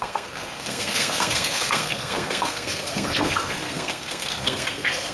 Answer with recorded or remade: remade